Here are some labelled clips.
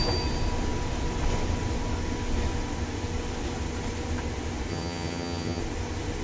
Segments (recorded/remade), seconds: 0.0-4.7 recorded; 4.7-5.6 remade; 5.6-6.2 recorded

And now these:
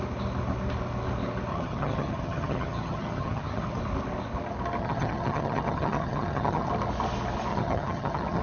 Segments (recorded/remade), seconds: 0.0-1.5 recorded; 1.5-3.8 remade; 3.8-4.8 recorded; 4.8-6.7 remade; 6.7-7.5 recorded; 7.5-8.4 remade

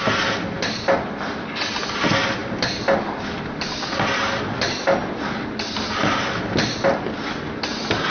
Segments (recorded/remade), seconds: 0.0-8.1 recorded

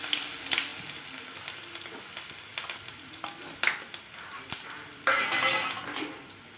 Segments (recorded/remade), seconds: 0.0-6.6 recorded

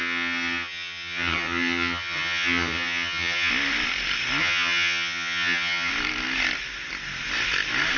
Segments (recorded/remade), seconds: 0.0-3.5 remade; 3.5-4.4 recorded; 4.4-5.9 remade; 5.9-8.0 recorded